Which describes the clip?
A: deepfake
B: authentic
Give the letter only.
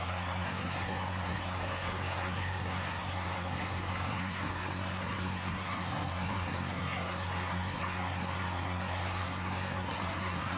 A